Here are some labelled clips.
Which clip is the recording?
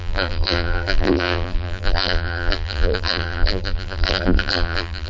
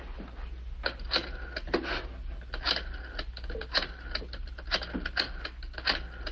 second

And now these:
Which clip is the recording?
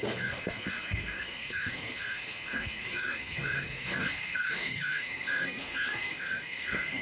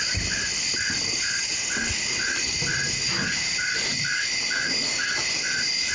second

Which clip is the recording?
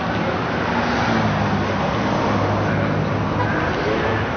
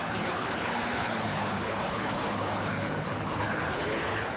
first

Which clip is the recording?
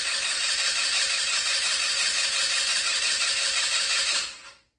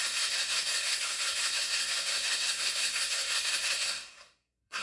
first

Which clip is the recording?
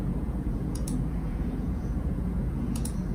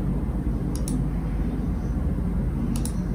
second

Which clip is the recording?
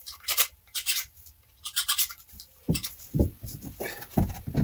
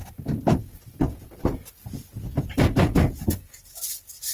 second